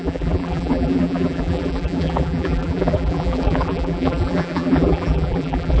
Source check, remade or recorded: remade